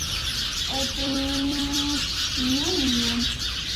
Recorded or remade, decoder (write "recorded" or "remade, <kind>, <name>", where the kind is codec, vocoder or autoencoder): remade, vocoder, BigVGAN v2